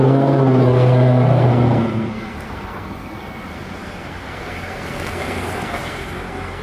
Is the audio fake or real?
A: fake